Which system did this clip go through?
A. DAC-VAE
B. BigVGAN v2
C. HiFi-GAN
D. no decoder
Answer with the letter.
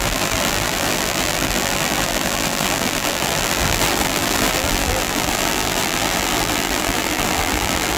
B